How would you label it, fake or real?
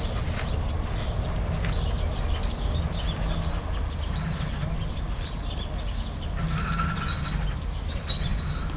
real